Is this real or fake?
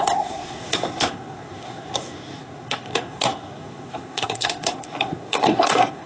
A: fake